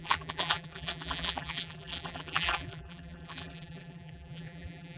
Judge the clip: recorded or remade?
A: remade